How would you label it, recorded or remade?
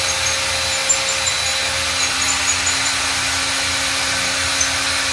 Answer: recorded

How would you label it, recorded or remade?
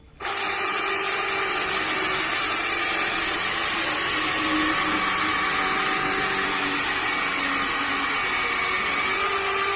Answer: recorded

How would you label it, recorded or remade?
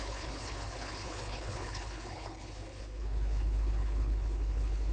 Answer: remade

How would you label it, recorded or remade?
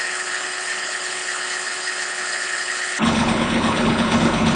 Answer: remade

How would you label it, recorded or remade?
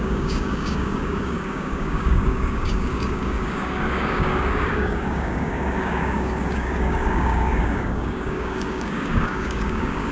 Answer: remade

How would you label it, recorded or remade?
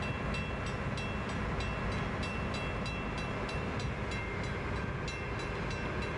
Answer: recorded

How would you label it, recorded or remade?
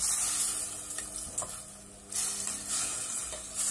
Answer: recorded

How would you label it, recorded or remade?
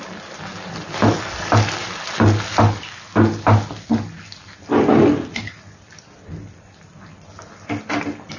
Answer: recorded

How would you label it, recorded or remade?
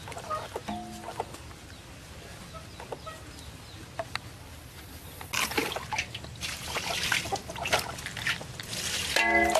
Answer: recorded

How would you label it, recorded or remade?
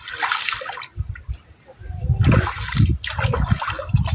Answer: recorded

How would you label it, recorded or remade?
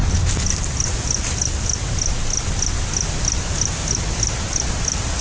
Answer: recorded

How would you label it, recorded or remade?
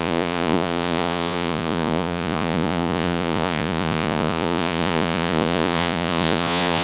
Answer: remade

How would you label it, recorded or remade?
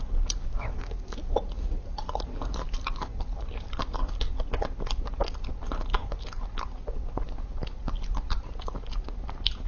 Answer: recorded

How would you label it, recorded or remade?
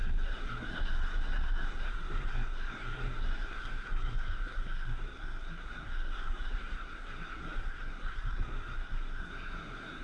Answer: remade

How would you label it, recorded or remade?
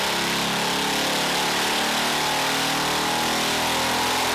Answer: recorded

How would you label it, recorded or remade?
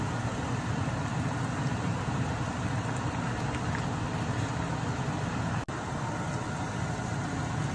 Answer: recorded